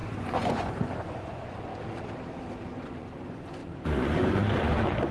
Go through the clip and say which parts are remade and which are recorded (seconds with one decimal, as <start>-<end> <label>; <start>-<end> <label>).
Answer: 0.0-1.7 remade; 1.7-2.7 recorded; 2.7-5.1 remade